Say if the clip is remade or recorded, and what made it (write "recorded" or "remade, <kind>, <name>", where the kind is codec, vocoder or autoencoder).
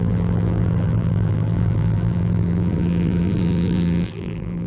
remade, vocoder, BigVGAN v2